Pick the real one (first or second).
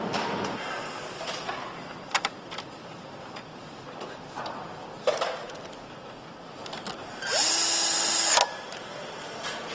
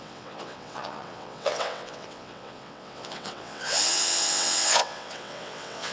first